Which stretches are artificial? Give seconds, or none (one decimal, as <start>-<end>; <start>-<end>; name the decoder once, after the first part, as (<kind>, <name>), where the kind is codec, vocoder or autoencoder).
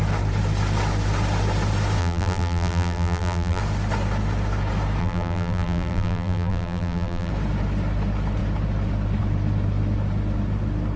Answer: 2.0-3.6 (vocoder, BigVGAN v2); 5.0-7.3